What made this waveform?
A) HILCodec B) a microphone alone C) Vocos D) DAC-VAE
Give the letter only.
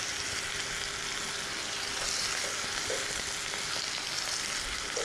B